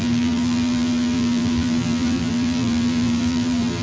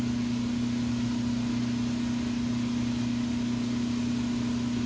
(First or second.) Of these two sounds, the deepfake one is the first